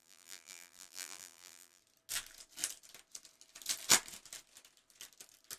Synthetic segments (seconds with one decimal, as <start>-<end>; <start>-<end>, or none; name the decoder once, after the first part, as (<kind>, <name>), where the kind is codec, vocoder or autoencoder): 0.0-1.8 (vocoder, BigVGAN v2)